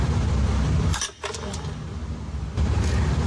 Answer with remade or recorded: recorded